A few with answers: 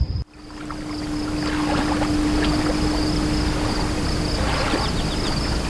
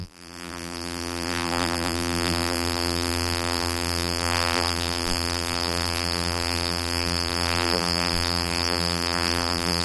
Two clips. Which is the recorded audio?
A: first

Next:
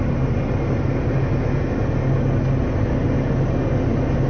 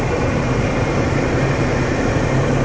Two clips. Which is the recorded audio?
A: first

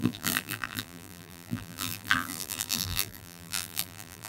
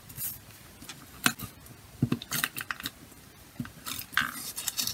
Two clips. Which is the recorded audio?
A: second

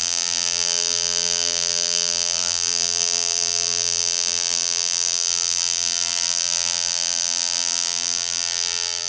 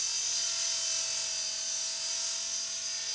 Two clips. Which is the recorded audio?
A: second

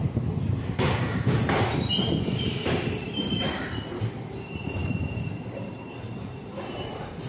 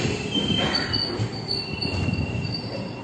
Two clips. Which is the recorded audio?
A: second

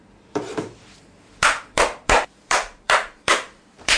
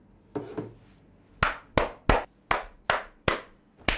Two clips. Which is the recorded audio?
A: second